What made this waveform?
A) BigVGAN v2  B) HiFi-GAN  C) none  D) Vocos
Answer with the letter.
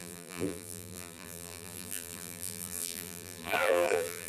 A